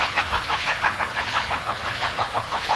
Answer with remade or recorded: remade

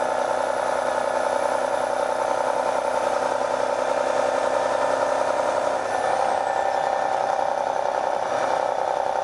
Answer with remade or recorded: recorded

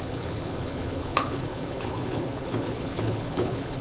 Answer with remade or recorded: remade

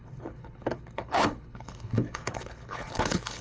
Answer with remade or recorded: remade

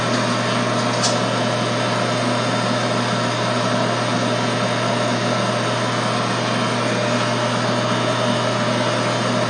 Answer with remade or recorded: recorded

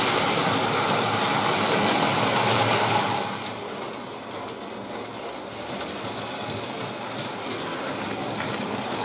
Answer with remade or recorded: recorded